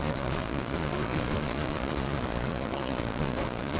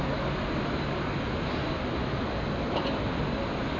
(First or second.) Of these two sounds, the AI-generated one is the first